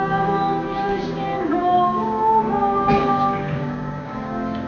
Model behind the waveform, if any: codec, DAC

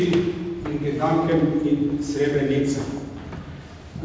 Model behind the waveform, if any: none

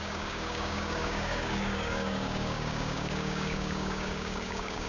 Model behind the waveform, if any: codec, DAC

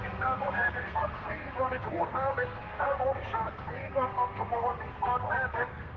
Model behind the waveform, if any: codec, SNAC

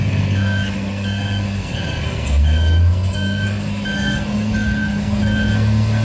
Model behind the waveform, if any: codec, SNAC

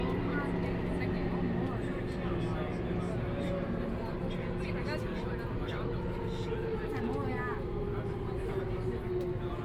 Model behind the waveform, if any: none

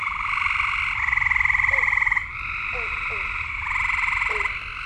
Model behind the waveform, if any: none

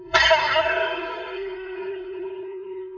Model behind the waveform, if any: codec, SNAC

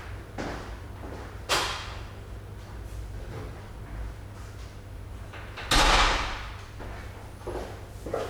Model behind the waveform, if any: none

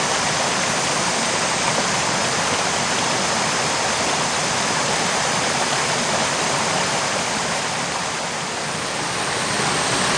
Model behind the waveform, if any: none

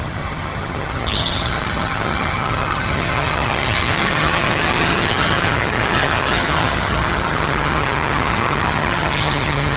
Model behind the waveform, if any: vocoder, HiFi-GAN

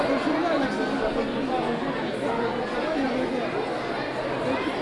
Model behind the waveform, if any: none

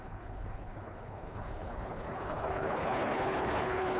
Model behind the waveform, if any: codec, HILCodec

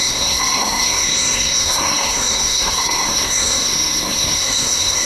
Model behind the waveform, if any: codec, SNAC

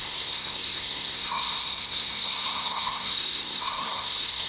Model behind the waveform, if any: codec, SNAC